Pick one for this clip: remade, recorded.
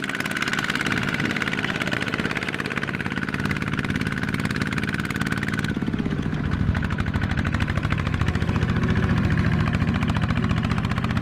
recorded